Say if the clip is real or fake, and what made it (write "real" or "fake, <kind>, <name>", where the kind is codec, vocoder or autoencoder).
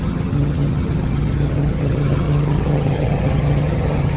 fake, vocoder, HiFi-GAN